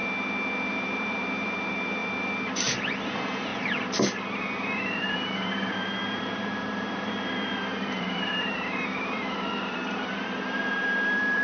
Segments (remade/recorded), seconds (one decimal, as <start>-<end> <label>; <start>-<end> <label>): 0.0-0.7 recorded; 0.7-11.4 remade